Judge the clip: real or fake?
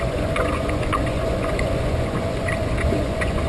fake